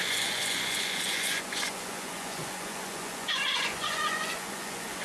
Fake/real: fake